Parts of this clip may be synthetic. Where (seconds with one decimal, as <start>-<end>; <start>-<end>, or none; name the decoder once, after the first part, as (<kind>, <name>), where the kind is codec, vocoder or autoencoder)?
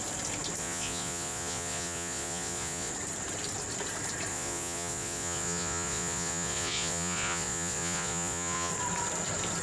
0.6-2.9 (vocoder, Vocos); 4.3-8.7